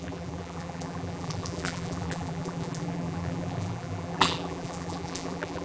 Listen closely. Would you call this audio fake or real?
fake